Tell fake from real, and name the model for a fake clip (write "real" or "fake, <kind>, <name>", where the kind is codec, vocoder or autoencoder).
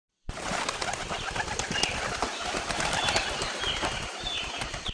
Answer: real